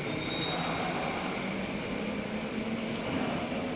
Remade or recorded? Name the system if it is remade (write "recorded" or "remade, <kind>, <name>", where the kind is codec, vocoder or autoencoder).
recorded